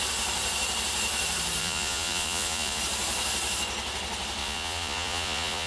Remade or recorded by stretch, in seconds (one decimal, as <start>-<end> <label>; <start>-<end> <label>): 0.0-1.6 recorded; 1.6-2.8 remade; 2.8-4.4 recorded; 4.4-5.7 remade